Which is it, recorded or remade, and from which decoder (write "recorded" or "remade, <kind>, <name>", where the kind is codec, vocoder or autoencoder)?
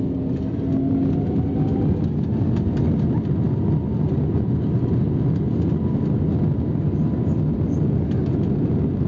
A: recorded